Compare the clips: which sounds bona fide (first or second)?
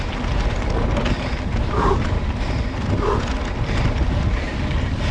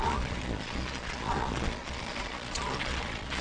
first